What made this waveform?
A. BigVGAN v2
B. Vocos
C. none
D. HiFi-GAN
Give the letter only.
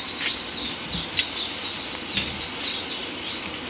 C